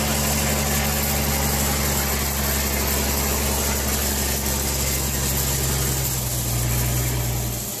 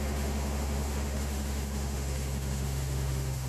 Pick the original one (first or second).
first